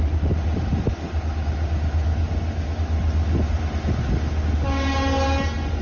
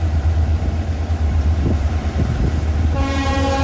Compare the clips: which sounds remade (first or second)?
second